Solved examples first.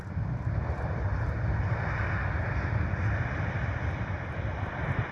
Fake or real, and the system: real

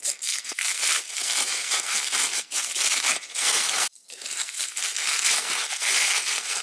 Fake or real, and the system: fake, codec, SNAC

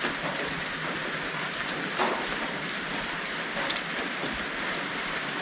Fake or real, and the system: real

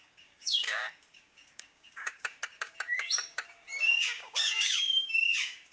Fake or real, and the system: fake, codec, DAC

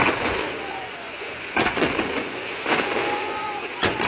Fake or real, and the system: fake, vocoder, Vocos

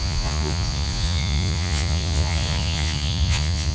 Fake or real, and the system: fake, vocoder, Vocos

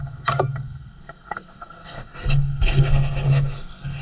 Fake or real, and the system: fake, codec, SNAC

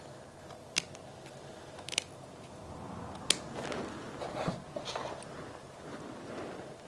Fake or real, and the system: real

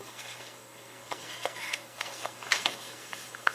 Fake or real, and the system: fake, codec, SNAC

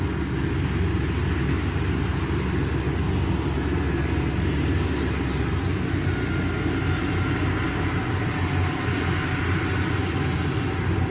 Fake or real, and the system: real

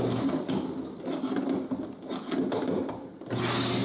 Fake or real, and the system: real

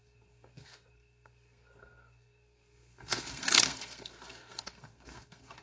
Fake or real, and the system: fake, codec, SNAC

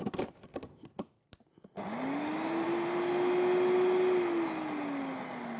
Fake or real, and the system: real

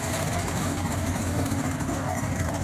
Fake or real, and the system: fake, codec, DAC